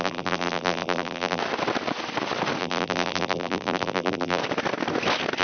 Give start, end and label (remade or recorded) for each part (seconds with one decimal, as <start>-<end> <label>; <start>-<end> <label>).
0.0-1.4 remade; 1.4-2.6 recorded; 2.6-4.4 remade; 4.4-5.4 recorded